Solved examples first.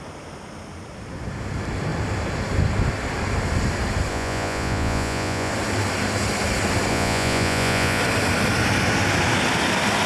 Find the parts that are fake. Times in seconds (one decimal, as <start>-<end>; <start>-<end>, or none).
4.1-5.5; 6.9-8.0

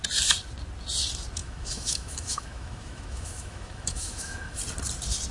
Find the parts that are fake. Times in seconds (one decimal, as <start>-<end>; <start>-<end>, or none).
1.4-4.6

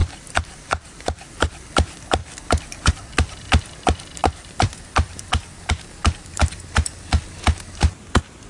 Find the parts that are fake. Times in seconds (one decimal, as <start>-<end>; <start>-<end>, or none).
0.0-1.3; 4.2-7.2

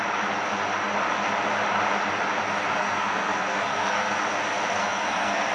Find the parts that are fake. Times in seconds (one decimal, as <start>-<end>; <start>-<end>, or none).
2.8-4.2; 4.8-5.5